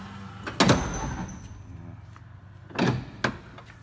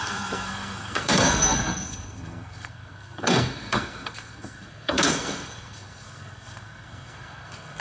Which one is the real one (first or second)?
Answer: first